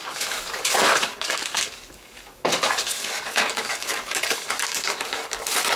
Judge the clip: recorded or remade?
remade